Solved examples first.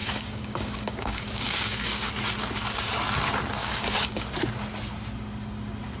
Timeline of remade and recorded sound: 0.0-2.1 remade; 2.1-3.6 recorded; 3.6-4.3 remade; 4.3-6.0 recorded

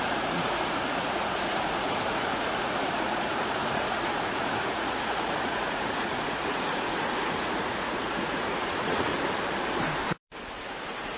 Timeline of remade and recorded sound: 0.0-9.1 remade; 9.1-11.2 recorded